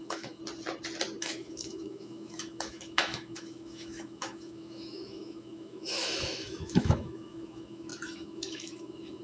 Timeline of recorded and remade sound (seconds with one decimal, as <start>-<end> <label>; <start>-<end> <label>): 0.0-0.4 remade; 0.4-1.2 recorded; 1.2-9.2 remade